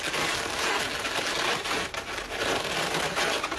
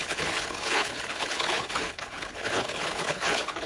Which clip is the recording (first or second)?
first